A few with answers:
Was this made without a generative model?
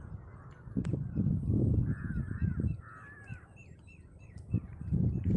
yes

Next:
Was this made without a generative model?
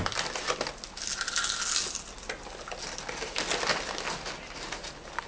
yes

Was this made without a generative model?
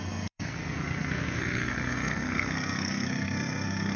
no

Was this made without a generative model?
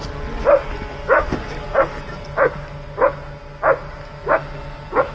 yes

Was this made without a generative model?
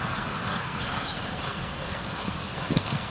no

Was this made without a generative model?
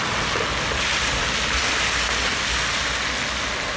yes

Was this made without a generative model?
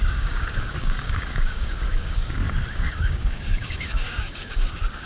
no